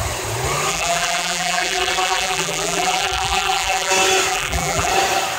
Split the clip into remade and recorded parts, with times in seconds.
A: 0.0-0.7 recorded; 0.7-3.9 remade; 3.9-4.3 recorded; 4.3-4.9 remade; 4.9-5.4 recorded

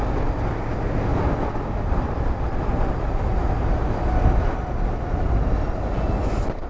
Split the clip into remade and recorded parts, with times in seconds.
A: 0.0-6.7 recorded

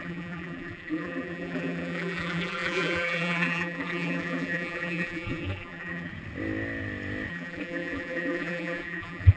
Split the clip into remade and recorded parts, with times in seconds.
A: 0.0-6.1 remade; 6.1-7.3 recorded; 7.3-9.4 remade

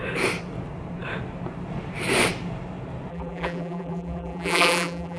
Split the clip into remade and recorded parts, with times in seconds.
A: 0.0-3.1 recorded; 3.1-5.2 remade